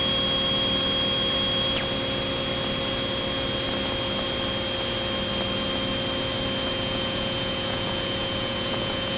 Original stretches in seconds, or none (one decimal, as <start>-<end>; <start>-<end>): 0.0-6.7